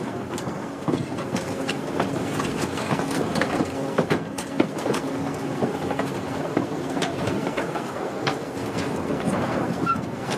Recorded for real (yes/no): no